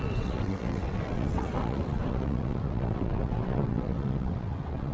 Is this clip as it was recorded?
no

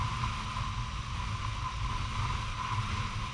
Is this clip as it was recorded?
yes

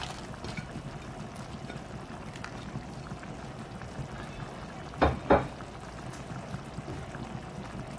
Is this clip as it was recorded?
yes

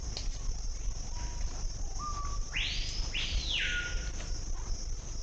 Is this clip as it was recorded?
yes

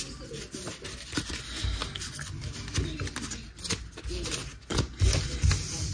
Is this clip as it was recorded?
yes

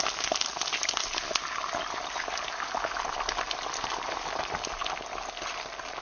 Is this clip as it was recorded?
yes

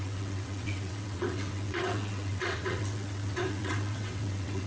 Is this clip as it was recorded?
no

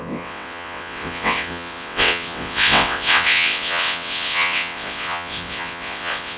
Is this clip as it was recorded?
no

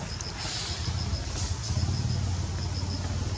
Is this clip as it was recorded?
yes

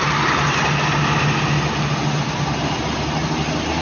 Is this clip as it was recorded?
yes